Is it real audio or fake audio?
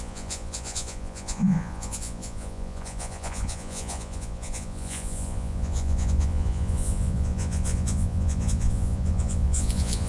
fake